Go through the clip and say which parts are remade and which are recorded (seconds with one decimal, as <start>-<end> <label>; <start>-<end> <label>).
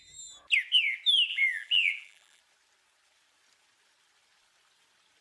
0.0-1.3 recorded; 1.3-2.4 remade; 2.4-5.2 recorded